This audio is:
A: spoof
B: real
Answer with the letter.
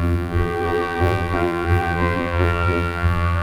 A